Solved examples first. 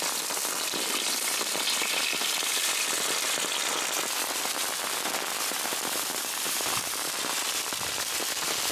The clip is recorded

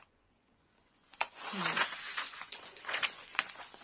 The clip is remade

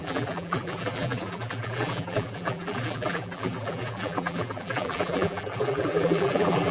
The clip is remade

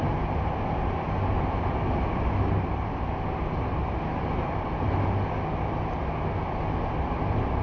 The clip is recorded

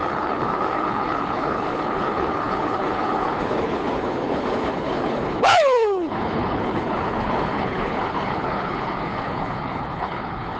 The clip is remade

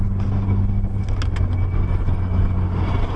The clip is recorded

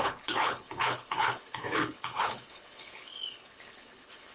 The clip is remade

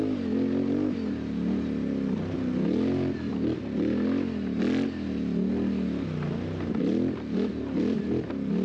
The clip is recorded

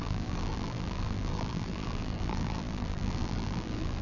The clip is remade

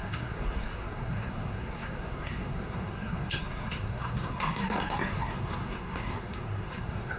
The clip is remade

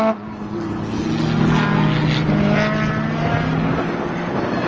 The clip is recorded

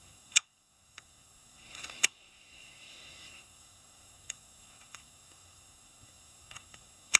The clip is remade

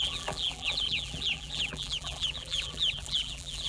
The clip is remade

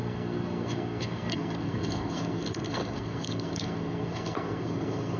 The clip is remade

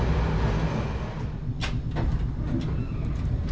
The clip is recorded